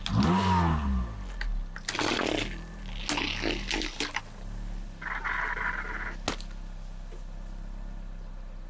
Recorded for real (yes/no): yes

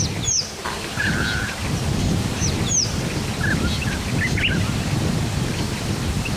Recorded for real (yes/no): yes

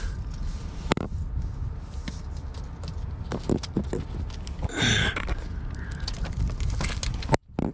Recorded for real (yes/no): yes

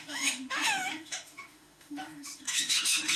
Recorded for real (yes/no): no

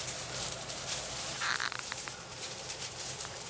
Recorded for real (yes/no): no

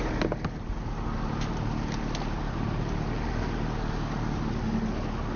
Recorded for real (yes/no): yes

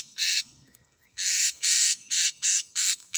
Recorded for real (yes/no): no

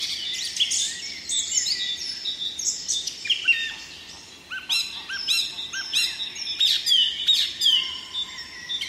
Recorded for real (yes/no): yes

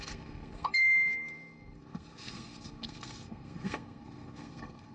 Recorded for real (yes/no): no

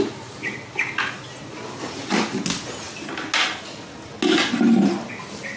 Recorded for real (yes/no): yes